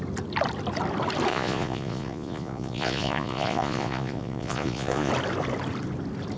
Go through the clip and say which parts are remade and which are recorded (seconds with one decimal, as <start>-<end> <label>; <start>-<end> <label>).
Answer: 0.0-1.3 recorded; 1.3-5.1 remade; 5.1-6.4 recorded